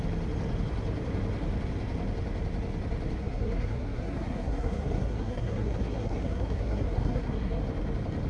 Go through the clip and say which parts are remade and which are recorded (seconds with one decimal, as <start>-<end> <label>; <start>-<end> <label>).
0.0-3.2 recorded; 3.2-7.6 remade; 7.6-8.3 recorded